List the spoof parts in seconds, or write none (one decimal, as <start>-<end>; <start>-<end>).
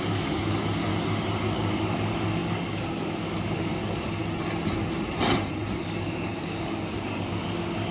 0.0-0.9; 1.4-4.2; 5.8-7.9